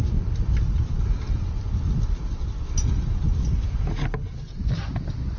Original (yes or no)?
yes